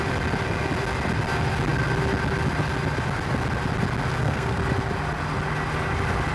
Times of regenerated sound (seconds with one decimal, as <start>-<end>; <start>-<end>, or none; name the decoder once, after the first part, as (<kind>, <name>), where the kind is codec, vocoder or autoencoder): 4.1-4.6 (codec, SNAC)

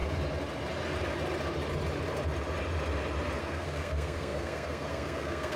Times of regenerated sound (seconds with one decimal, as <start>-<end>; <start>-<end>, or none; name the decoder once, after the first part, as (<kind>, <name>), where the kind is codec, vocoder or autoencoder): 3.4-5.6 (codec, SNAC)

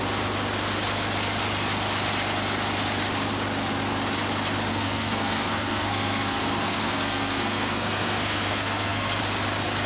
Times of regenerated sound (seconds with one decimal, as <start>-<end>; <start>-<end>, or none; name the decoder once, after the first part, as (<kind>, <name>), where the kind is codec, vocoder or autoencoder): 4.7-9.2 (codec, SNAC)

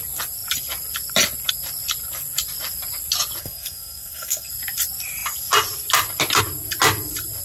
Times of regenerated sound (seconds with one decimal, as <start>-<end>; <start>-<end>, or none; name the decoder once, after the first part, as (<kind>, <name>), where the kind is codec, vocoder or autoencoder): 3.4-4.5 (codec, SNAC)

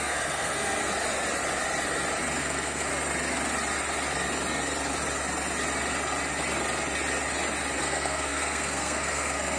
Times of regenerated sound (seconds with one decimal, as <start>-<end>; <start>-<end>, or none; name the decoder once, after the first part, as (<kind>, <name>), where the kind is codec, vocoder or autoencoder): 0.0-0.8 (codec, SNAC); 2.4-2.9; 7.8-9.6

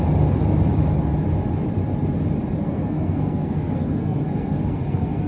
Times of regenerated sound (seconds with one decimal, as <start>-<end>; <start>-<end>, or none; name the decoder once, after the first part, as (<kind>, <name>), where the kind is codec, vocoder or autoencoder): 2.6-5.3 (codec, SNAC)

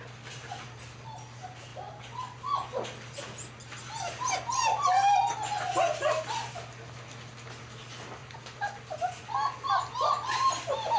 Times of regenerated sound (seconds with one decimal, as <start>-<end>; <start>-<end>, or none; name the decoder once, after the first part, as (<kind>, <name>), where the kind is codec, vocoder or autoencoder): none